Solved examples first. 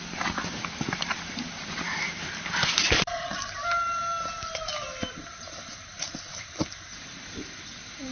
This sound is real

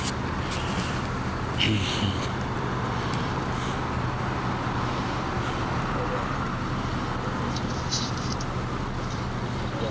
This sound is real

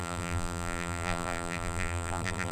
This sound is fake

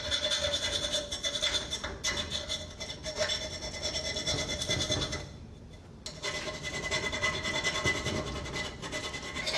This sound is real